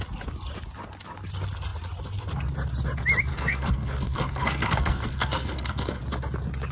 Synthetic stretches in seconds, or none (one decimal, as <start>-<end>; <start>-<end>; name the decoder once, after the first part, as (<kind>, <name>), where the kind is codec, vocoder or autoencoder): 3.3-6.0 (codec, SNAC)